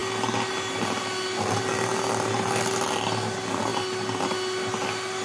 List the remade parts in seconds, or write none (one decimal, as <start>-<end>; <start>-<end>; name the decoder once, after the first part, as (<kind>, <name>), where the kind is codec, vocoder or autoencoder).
none